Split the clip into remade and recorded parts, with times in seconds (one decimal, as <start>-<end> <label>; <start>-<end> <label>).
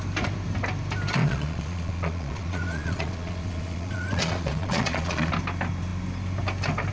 0.0-1.2 recorded; 1.2-5.3 remade; 5.3-6.9 recorded